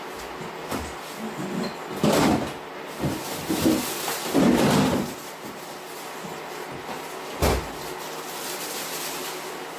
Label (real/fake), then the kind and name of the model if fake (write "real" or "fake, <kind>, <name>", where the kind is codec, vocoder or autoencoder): real